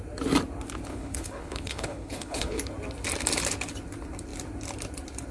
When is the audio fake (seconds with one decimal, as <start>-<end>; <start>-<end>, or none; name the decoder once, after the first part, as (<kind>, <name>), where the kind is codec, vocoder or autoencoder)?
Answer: 0.9-2.6 (codec, HILCodec)